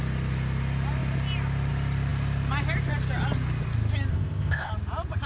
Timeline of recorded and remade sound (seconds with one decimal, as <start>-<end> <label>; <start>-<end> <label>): 0.0-4.1 recorded; 4.1-4.7 remade; 4.7-5.3 recorded